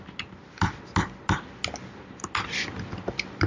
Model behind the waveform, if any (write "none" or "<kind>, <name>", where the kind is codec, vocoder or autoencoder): none